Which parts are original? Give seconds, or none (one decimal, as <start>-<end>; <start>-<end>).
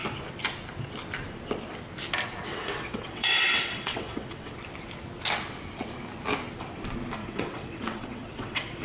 0.0-2.5; 4.5-7.2